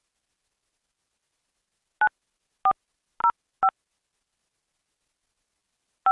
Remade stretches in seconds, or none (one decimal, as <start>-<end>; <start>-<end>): none